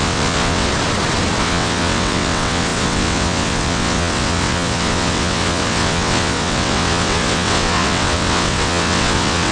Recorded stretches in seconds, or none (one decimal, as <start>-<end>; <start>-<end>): 0.7-1.4